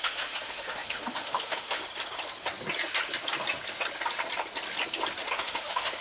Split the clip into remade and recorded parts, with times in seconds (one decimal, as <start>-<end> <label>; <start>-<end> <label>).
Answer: 0.0-1.8 remade; 1.8-5.3 recorded; 5.3-6.0 remade